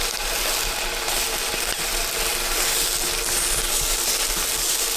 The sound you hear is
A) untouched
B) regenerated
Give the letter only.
A